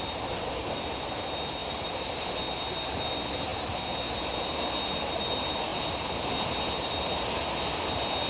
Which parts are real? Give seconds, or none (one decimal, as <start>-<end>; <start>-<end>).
0.0-1.6; 2.3-8.3